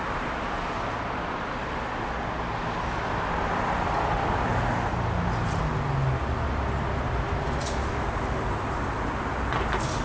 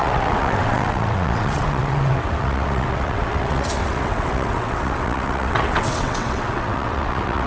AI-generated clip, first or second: second